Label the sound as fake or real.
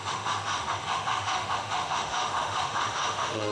fake